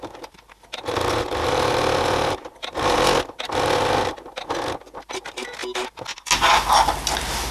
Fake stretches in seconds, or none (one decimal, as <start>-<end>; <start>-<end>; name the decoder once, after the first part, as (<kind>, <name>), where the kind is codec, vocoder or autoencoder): none